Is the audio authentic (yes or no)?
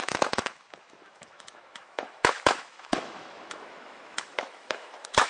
no